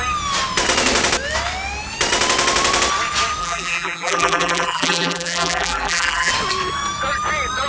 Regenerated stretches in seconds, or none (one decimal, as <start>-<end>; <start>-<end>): 3.4-6.3